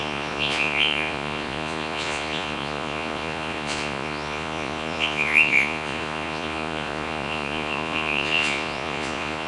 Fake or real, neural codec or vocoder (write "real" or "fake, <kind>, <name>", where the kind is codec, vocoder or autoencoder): fake, vocoder, Vocos